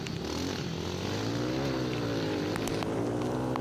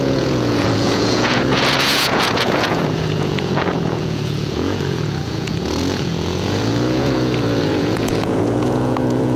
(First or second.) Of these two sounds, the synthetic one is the second